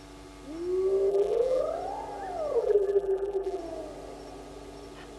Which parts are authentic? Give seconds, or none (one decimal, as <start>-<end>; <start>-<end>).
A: 0.0-1.1; 1.6-2.6; 3.6-5.2